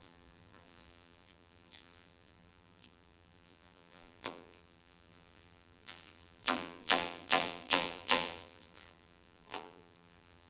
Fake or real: fake